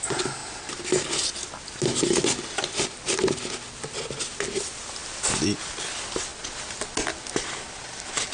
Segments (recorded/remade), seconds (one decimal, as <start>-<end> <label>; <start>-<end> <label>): 0.0-8.3 recorded